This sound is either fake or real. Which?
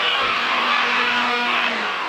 fake